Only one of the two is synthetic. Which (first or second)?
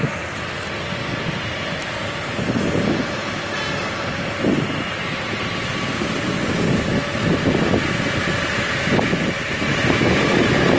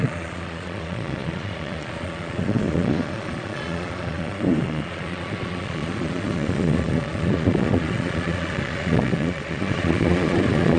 second